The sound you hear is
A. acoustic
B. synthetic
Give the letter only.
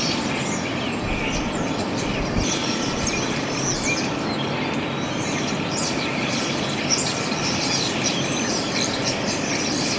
A